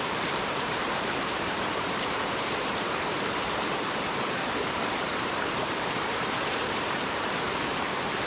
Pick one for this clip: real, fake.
fake